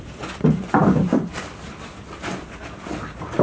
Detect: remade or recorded recorded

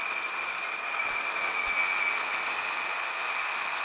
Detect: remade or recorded recorded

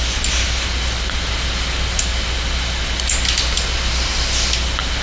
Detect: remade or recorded recorded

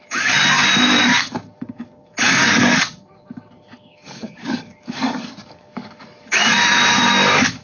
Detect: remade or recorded remade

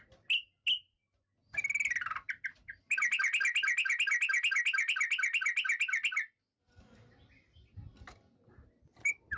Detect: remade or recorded recorded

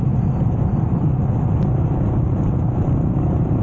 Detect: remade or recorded recorded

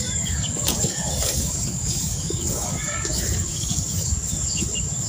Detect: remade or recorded remade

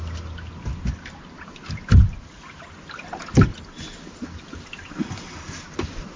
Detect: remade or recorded recorded